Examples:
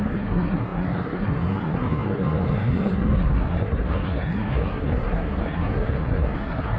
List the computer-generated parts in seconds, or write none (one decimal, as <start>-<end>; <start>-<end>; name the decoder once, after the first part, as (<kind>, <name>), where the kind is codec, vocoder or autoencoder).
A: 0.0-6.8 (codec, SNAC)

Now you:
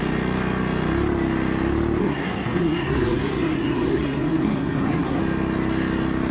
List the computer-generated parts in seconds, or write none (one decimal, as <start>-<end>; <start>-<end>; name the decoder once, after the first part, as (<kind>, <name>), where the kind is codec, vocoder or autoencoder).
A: 2.0-5.2 (codec, SNAC)

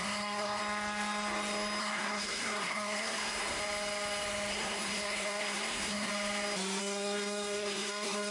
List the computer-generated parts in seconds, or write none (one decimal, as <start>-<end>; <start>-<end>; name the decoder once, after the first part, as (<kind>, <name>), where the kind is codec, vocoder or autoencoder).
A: 0.0-0.6 (codec, SNAC); 1.8-3.6; 4.5-6.1; 6.8-8.3